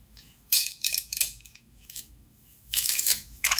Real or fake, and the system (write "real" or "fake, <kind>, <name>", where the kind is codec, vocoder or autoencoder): fake, autoencoder, DAC-VAE